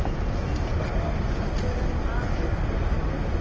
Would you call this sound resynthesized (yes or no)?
no